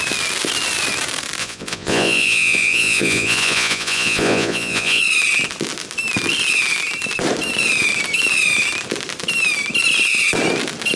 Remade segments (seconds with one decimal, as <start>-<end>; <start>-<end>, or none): 1.4-5.0